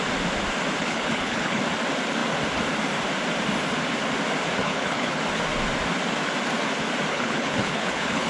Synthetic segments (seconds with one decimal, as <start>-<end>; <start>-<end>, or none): 0.8-1.6; 4.6-5.2; 7.1-8.3

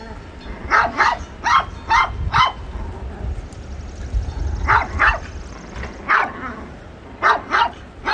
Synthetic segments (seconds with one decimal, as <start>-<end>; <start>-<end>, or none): none

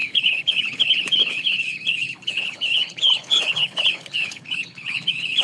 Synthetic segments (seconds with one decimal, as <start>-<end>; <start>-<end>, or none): 0.0-5.4

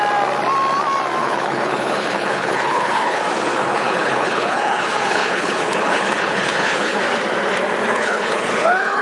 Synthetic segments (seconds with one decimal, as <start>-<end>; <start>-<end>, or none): 1.2-3.2; 3.6-7.0; 7.9-9.0

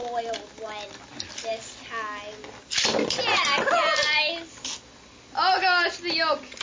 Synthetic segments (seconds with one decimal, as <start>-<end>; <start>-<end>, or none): none

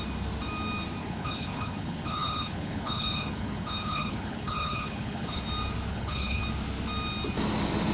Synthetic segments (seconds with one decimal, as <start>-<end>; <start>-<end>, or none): 1.0-5.4; 5.9-6.4